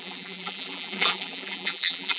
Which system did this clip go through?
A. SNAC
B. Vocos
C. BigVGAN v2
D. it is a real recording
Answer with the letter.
C